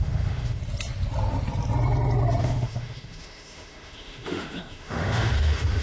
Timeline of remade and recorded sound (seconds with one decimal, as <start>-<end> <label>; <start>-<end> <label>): 0.0-0.6 remade; 0.6-2.4 recorded; 2.4-5.8 remade

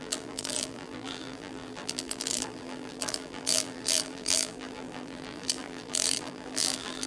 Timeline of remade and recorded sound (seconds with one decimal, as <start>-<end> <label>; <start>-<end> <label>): 0.0-7.1 remade

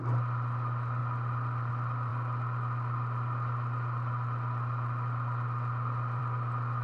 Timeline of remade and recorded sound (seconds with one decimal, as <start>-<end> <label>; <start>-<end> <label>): 0.0-1.0 recorded; 1.0-1.7 remade; 1.7-6.8 recorded

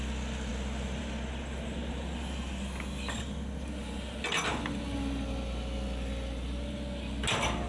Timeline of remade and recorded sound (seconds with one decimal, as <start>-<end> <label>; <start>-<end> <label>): 0.0-7.7 recorded